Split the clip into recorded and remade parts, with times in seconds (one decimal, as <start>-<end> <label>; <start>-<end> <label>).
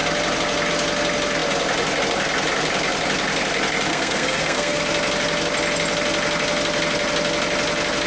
0.0-3.9 recorded; 3.9-4.8 remade; 4.8-8.1 recorded